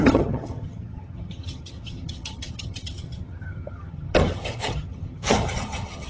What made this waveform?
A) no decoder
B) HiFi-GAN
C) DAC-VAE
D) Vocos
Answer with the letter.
B